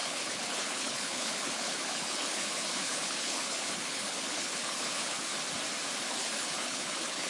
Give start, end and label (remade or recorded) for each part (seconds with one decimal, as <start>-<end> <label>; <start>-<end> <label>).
0.0-5.3 remade; 5.3-6.1 recorded; 6.1-7.3 remade